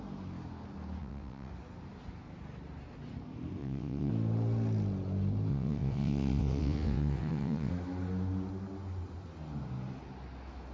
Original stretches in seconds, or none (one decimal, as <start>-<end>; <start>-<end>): 0.0-1.0; 1.5-3.6; 4.1-5.5; 7.7-10.7